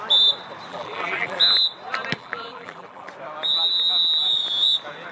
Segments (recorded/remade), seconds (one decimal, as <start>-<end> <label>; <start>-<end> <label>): 0.0-0.7 recorded; 0.7-1.4 remade; 1.4-2.2 recorded; 2.2-3.1 remade; 3.1-5.1 recorded